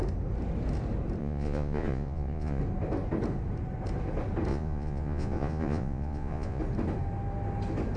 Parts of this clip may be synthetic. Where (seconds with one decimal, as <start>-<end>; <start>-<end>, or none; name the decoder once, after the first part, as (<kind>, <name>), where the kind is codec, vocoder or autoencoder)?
1.2-2.6 (vocoder, Vocos); 4.5-6.6